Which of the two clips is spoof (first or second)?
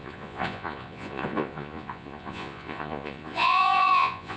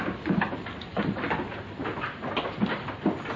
first